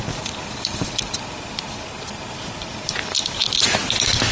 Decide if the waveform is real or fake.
real